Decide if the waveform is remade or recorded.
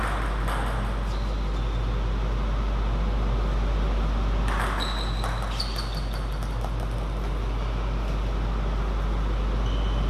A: recorded